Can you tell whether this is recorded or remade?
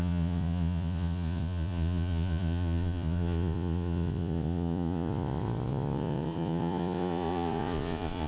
remade